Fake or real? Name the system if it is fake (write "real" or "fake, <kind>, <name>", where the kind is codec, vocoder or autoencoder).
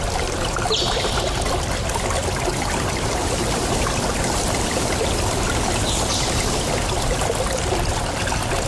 real